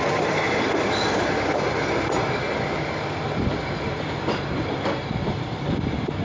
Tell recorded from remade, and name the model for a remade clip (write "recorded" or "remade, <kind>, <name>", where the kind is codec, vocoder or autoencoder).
recorded